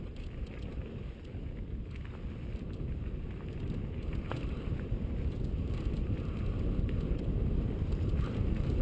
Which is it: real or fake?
real